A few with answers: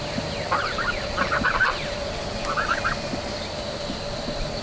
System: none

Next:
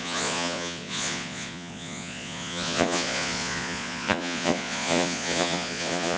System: vocoder, Vocos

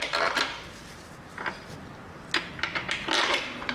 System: none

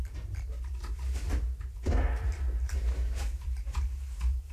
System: vocoder, BigVGAN v2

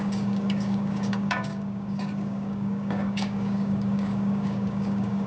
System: codec, DAC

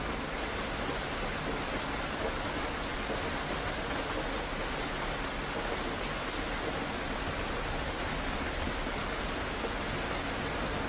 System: none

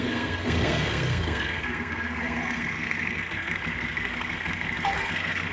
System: codec, SNAC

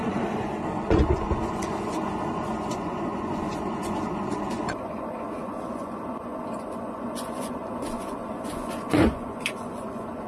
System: vocoder, Vocos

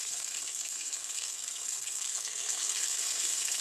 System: codec, SNAC